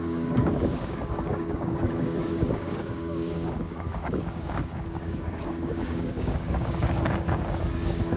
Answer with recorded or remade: remade